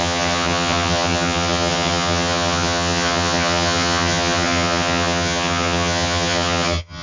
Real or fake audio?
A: fake